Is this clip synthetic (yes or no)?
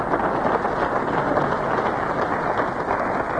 no